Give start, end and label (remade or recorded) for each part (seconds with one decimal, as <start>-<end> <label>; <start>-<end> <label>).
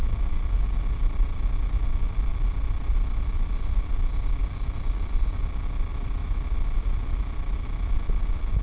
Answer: 0.0-5.9 recorded; 5.9-6.8 remade; 6.8-8.6 recorded